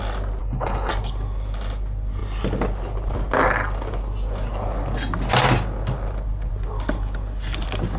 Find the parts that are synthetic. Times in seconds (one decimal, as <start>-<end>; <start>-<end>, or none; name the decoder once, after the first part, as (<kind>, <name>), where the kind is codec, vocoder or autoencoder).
0.4-0.9 (codec, HILCodec)